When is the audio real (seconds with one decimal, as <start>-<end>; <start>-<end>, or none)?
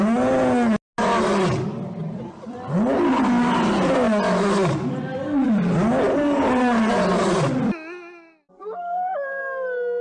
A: 0.0-8.6; 9.4-10.0